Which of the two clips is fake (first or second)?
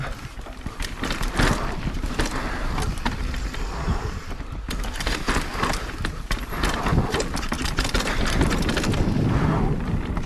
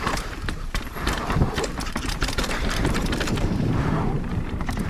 second